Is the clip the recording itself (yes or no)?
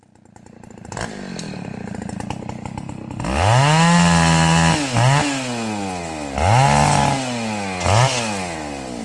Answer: yes